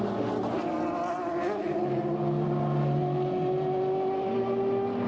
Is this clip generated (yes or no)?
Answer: no